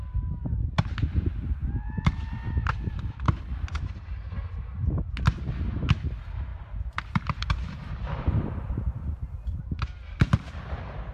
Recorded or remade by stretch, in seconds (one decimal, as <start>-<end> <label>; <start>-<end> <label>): 0.0-1.6 recorded; 1.6-3.5 remade; 3.5-6.5 recorded; 6.5-9.6 remade; 9.6-11.1 recorded